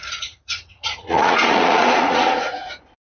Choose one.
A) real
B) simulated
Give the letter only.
B